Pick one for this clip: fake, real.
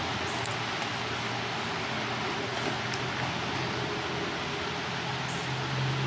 real